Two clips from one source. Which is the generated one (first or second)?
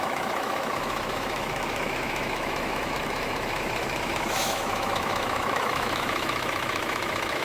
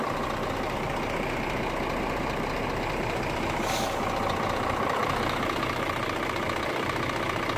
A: first